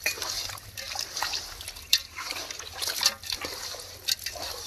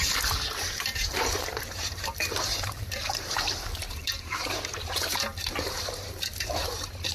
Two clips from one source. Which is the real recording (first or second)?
first